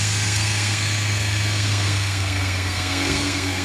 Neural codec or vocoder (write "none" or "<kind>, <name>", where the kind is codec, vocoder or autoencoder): codec, SNAC